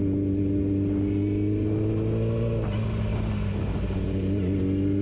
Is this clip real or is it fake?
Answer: real